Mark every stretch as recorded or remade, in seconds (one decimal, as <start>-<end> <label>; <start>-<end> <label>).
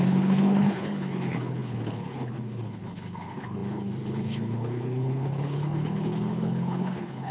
0.0-7.3 remade